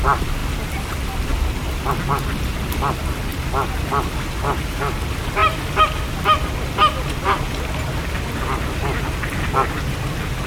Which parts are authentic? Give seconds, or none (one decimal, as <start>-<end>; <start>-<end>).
0.0-10.5